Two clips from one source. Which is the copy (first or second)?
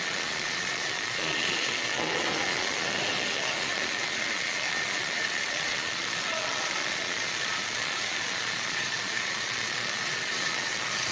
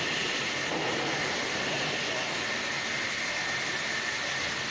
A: first